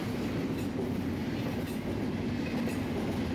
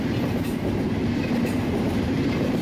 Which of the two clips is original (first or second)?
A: first